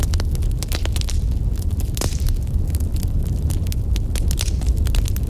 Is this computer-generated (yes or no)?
no